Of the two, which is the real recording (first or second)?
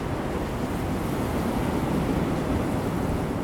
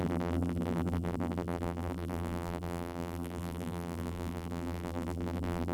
first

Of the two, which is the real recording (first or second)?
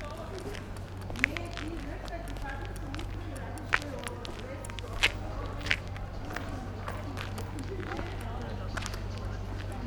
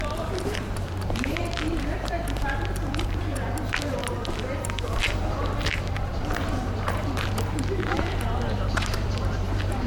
first